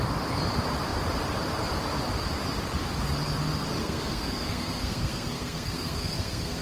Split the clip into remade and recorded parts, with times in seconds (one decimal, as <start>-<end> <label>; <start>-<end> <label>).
0.0-3.8 recorded; 3.8-6.6 remade